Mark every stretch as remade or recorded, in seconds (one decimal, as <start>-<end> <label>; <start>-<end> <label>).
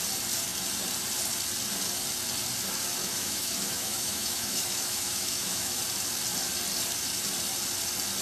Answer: 0.0-3.0 recorded; 3.0-5.8 remade; 5.8-8.2 recorded